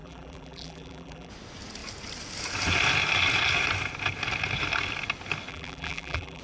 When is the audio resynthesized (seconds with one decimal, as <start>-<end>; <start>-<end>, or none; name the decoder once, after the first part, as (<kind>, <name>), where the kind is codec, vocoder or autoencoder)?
0.0-1.3 (vocoder, BigVGAN v2); 5.5-6.4